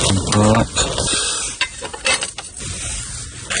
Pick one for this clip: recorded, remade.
recorded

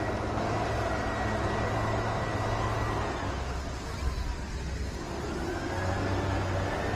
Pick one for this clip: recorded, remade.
recorded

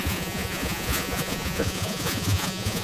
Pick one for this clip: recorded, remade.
remade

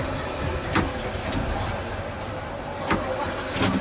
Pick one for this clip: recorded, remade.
recorded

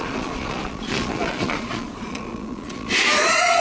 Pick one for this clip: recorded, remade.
remade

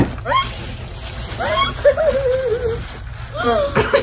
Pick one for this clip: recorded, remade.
recorded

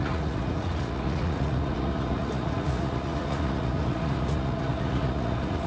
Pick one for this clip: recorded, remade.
remade